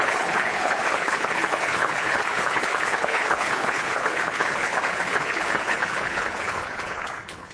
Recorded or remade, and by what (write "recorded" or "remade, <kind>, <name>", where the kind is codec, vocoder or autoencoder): remade, codec, HILCodec